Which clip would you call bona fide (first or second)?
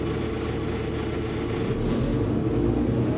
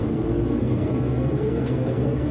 first